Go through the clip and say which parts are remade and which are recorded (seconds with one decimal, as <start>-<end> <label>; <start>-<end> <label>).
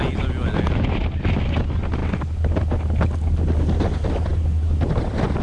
0.0-5.4 recorded